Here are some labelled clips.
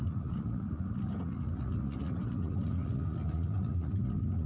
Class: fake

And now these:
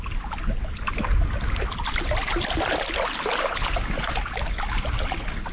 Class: real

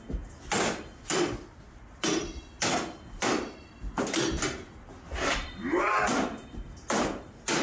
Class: real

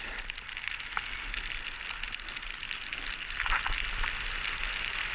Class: real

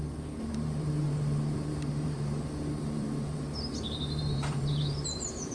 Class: fake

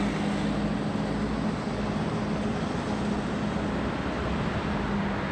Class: real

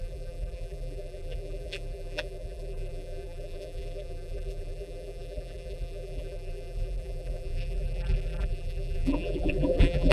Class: fake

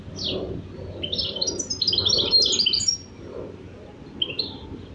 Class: real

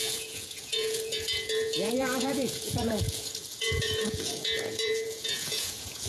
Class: fake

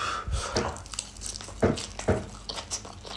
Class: real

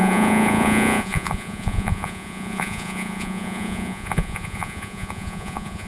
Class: fake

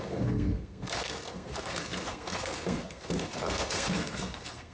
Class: fake